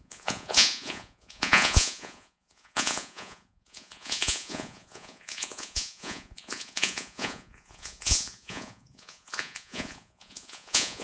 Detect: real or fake fake